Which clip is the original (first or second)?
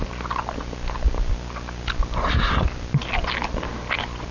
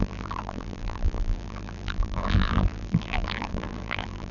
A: first